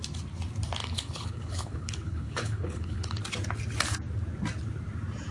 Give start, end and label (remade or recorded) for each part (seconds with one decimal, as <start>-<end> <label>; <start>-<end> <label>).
0.0-0.8 recorded; 0.8-3.2 remade; 3.2-5.3 recorded